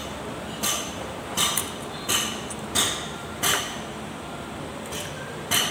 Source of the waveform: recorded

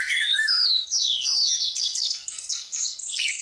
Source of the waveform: remade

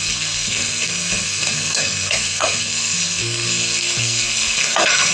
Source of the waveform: remade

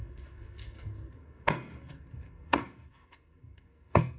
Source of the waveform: remade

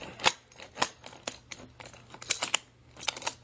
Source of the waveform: recorded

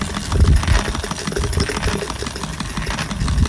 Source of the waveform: recorded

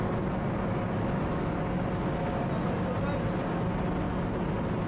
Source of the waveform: recorded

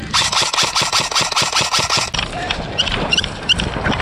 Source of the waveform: recorded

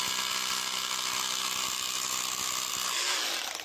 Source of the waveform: recorded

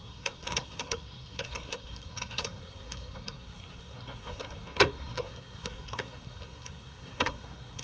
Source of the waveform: remade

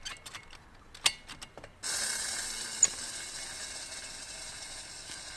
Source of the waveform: recorded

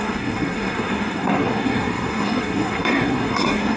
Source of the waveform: remade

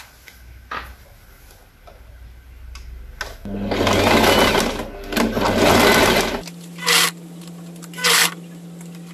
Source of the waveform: recorded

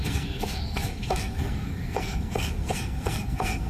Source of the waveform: remade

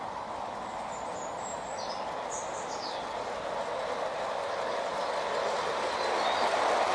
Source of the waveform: recorded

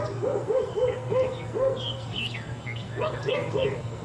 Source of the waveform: remade